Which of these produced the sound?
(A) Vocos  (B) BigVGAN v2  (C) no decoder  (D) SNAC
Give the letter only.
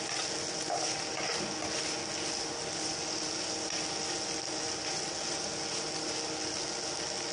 C